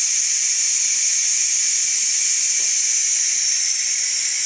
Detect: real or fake real